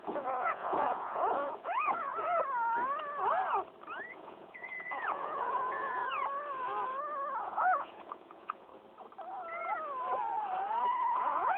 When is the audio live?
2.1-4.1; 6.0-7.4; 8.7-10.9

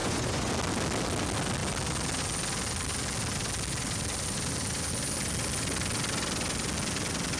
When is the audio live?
0.5-7.4

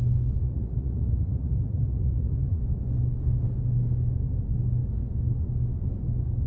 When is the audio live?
0.0-0.4; 2.6-6.5